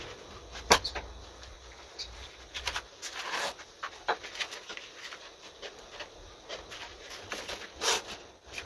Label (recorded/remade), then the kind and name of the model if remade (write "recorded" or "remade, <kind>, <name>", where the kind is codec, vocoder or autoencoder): recorded